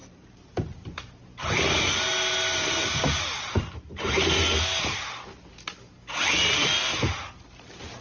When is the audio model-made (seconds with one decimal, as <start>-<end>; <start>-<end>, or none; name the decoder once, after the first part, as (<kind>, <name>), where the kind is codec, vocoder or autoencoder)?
0.0-3.9 (vocoder, BigVGAN v2)